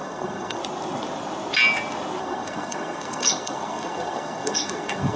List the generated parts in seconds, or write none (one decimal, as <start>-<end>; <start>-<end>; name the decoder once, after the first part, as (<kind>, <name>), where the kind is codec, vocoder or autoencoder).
0.0-0.6 (codec, SNAC); 2.2-5.2